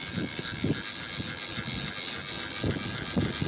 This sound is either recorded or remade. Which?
recorded